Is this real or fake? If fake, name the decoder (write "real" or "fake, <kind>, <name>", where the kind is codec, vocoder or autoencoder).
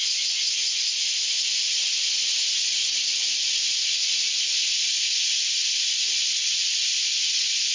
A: real